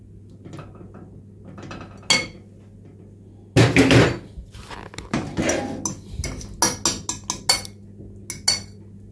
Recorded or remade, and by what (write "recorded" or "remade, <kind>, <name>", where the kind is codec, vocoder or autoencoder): recorded